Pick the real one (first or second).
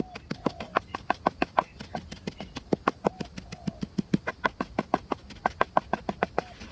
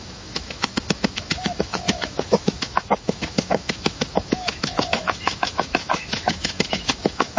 first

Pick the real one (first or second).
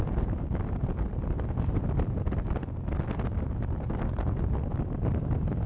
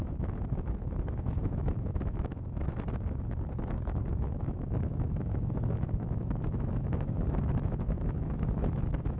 first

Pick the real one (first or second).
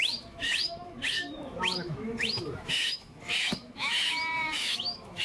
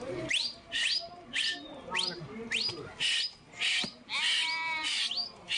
second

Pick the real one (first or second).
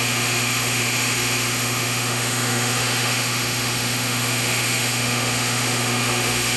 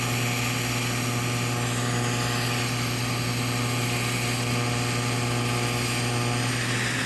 second